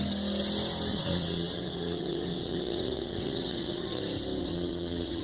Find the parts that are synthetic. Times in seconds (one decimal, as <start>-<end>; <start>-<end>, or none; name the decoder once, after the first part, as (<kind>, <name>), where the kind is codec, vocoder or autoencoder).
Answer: 0.9-4.0 (vocoder, WaveNeXt); 4.4-5.2